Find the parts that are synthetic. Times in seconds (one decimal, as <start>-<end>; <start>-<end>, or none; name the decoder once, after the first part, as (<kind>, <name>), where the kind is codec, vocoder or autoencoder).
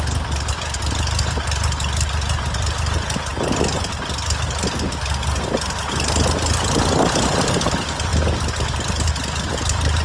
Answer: none